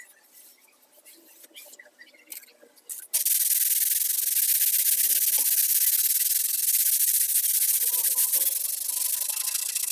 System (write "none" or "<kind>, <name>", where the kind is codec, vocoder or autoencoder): none